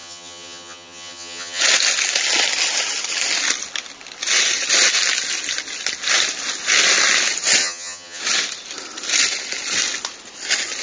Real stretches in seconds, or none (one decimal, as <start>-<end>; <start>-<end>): 1.6-7.6; 8.2-10.8